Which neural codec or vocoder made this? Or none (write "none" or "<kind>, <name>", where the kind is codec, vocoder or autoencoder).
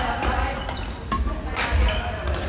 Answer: none